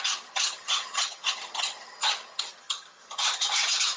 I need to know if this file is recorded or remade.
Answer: remade